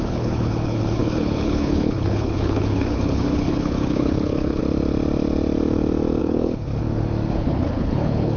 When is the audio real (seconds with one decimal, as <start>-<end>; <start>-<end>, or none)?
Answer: 4.6-6.2; 6.7-7.3

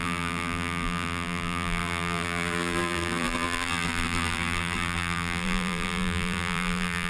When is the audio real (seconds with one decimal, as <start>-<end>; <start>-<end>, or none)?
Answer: none

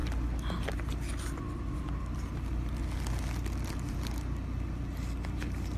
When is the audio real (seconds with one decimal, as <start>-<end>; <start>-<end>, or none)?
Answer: 0.0-5.8

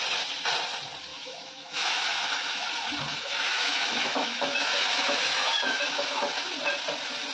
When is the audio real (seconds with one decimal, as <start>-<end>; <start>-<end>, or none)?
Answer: 0.0-1.1; 2.7-3.1; 6.3-7.3

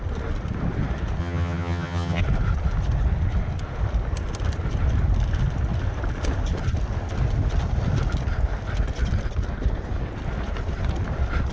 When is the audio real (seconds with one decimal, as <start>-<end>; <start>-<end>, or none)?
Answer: 0.0-1.2; 2.2-11.5

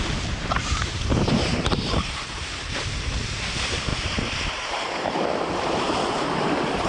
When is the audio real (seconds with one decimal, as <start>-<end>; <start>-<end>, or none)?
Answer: none

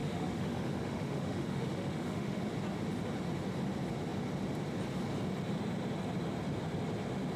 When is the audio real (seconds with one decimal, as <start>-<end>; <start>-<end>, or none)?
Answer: 2.4-7.4

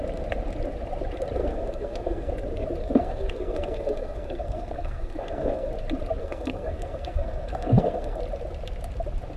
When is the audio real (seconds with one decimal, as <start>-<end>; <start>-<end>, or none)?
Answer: 0.0-1.4; 2.3-2.8; 5.7-6.2; 8.2-9.4